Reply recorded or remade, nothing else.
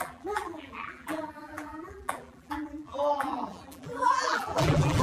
remade